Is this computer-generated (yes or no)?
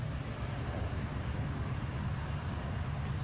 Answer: no